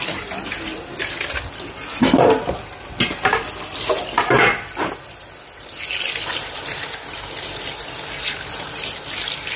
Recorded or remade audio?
recorded